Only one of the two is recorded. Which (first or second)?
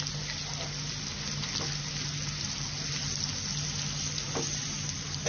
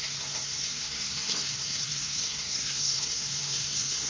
first